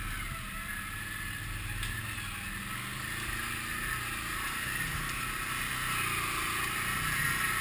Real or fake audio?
real